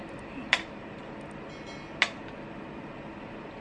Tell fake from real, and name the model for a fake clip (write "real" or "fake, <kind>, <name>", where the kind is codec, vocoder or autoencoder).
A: real